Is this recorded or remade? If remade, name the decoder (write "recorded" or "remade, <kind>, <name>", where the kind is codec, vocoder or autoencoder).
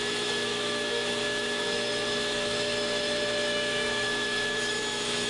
remade, autoencoder, DAC-VAE